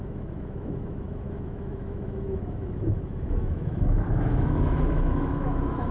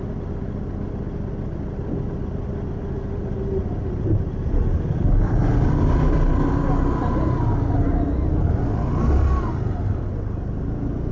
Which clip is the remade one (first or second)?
first